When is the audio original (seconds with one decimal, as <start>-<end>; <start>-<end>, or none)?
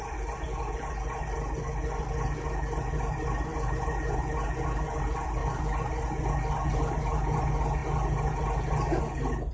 0.0-9.5